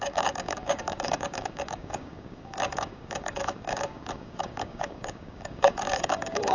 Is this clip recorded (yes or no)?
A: no